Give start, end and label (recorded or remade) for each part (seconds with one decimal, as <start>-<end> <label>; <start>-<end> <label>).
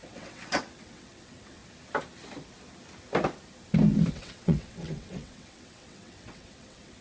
0.0-1.6 remade; 1.6-4.1 recorded; 4.1-7.0 remade